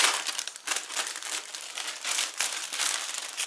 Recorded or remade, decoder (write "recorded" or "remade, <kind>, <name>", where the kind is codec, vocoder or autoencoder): remade, vocoder, BigVGAN v2